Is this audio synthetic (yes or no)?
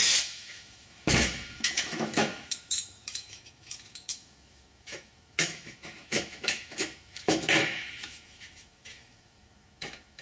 yes